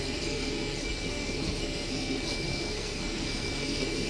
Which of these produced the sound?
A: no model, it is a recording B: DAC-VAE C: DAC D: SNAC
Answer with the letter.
D